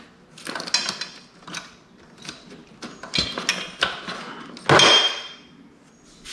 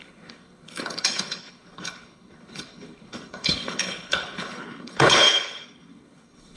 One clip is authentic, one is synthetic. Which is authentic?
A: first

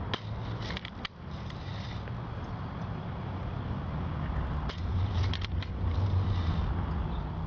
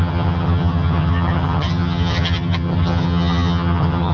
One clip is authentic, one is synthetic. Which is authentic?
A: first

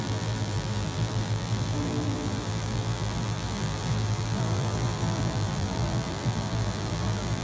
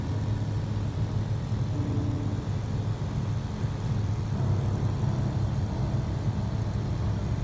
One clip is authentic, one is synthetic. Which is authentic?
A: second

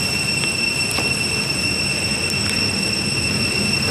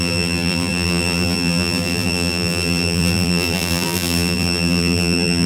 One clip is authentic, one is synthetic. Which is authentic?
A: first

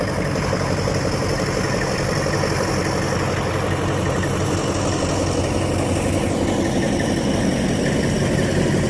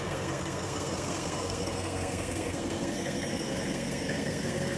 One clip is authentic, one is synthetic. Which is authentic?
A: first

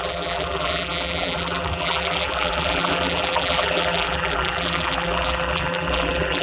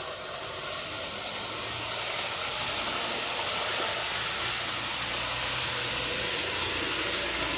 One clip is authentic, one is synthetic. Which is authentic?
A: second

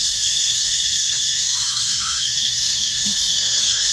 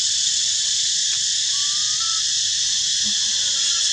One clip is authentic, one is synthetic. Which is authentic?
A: second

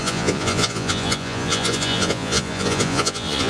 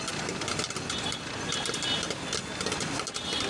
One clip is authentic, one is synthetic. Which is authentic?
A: second